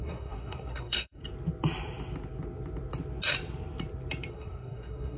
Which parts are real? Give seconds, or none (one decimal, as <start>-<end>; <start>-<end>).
1.2-4.3